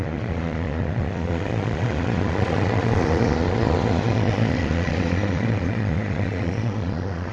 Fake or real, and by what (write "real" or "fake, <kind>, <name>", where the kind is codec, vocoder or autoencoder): fake, vocoder, Vocos